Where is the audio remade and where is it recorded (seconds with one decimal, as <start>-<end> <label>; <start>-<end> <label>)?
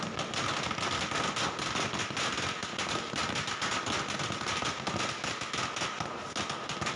0.0-7.0 recorded